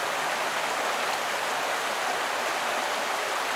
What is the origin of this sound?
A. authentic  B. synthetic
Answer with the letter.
A